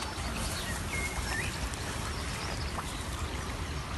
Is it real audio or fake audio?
real